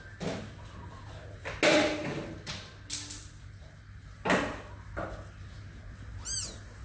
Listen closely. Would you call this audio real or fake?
real